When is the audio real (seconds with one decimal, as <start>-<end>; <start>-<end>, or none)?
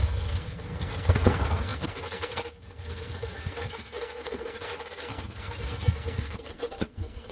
none